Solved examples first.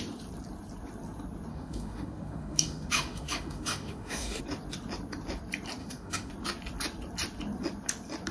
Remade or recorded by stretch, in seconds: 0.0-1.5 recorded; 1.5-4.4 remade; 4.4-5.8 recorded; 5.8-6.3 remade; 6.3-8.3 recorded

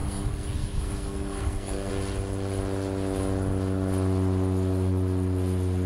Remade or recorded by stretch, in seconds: 0.0-1.9 remade; 1.9-5.9 recorded

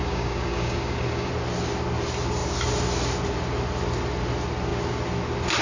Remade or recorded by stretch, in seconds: 0.0-1.3 remade; 1.3-5.6 recorded

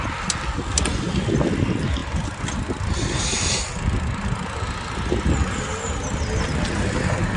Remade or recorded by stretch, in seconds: 0.0-7.4 recorded

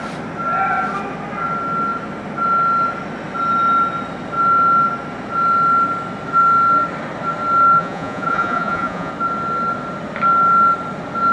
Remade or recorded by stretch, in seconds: 0.0-7.8 recorded; 7.8-9.1 remade; 9.1-11.3 recorded